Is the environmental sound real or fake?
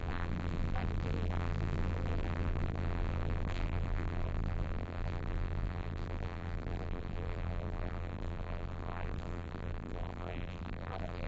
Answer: fake